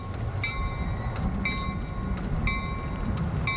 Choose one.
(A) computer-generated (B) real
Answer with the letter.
B